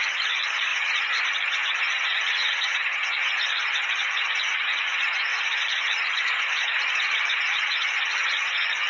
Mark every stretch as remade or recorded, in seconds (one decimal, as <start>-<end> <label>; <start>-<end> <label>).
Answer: 0.0-8.9 remade